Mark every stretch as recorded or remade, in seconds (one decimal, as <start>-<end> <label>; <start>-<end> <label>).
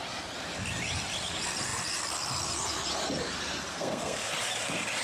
0.0-3.7 recorded; 3.7-4.3 remade; 4.3-5.0 recorded